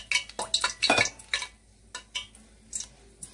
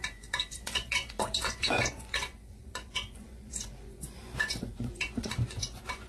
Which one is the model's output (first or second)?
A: second